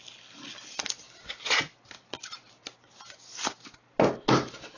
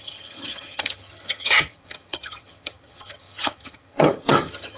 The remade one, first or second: second